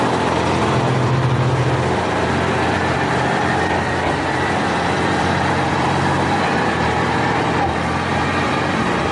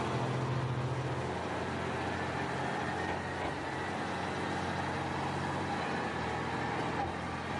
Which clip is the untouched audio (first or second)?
second